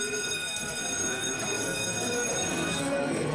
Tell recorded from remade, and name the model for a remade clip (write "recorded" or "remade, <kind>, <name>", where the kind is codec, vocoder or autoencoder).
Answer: remade, codec, SNAC